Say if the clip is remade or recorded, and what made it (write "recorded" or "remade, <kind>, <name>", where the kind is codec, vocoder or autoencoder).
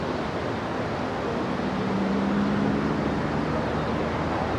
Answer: remade, vocoder, BigVGAN v2